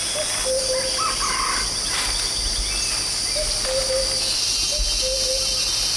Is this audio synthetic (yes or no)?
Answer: no